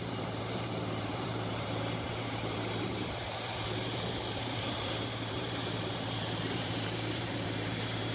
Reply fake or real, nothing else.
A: fake